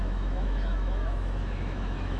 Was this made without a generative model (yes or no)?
no